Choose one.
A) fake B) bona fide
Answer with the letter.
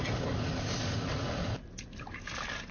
B